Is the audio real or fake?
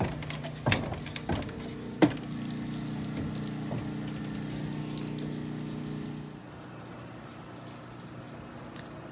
real